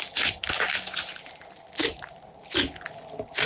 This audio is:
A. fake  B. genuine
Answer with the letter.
B